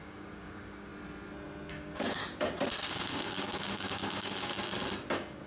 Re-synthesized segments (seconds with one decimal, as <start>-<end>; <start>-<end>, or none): 0.0-0.9; 1.7-2.2; 2.9-4.5; 5.1-5.5